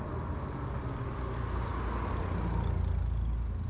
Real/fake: real